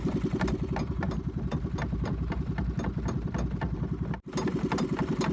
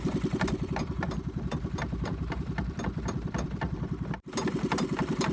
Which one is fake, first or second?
second